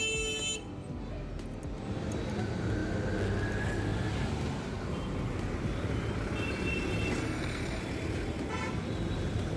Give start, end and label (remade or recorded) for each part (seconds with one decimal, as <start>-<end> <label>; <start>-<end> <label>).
0.0-7.2 recorded; 7.2-7.8 remade; 7.8-9.6 recorded